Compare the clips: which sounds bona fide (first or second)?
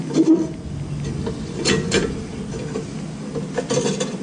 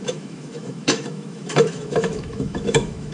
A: first